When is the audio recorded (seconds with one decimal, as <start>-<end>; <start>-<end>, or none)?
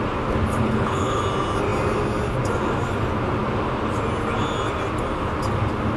0.0-0.6; 1.2-6.0